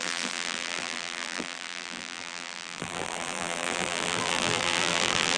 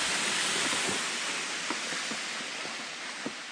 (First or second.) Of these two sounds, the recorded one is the second